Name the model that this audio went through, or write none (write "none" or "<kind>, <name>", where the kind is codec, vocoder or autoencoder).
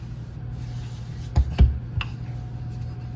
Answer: none